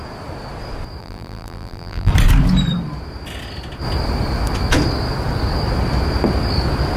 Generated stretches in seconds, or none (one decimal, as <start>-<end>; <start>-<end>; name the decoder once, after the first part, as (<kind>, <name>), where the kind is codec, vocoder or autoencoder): 1.0-2.1 (vocoder, BigVGAN v2)